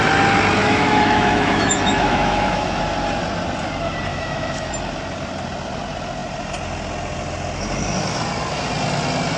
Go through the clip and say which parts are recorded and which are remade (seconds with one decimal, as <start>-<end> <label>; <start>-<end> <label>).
0.0-0.6 recorded; 0.6-2.8 remade; 2.8-4.1 recorded; 4.1-4.7 remade; 4.7-9.4 recorded